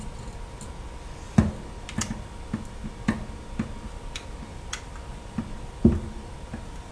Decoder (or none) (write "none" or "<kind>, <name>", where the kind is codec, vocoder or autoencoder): none